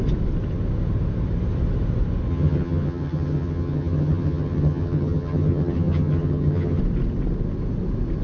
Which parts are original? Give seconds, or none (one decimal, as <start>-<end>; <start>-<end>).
0.0-2.3; 6.8-8.2

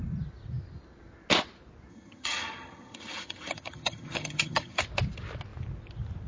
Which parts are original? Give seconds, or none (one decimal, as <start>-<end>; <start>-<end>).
0.0-1.9; 4.8-6.3

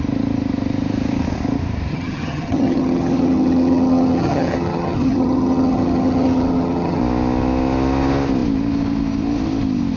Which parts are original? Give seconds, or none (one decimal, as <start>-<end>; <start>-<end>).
0.0-1.9; 7.0-10.0

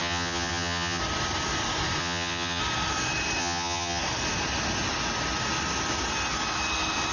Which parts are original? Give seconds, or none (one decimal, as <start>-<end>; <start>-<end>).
1.0-2.0; 2.6-3.4; 4.0-7.1

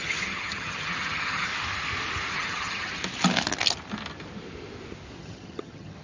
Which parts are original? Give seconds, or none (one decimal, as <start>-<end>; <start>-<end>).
1.5-2.3; 3.0-5.2

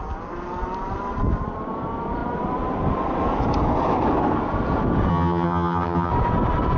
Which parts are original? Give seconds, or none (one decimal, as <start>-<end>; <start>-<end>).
0.0-5.1; 6.1-6.8